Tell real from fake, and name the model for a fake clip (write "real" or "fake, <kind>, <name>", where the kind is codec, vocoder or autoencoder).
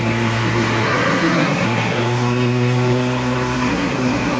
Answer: fake, codec, SNAC